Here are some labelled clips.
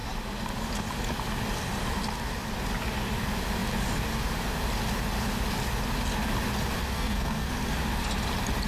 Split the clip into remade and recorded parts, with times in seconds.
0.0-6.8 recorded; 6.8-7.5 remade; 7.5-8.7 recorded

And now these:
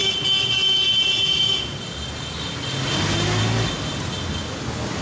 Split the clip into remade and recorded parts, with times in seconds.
0.0-5.0 recorded